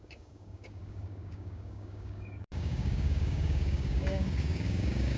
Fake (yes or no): yes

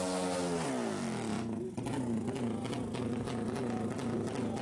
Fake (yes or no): no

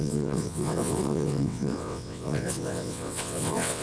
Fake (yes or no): yes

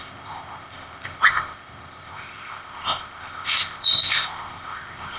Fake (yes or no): yes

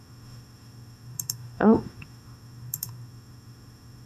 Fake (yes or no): yes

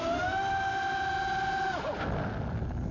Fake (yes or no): no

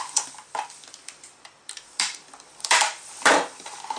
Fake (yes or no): yes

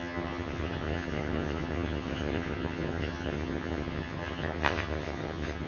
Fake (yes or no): yes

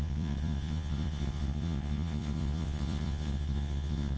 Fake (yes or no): yes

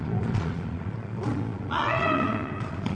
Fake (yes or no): yes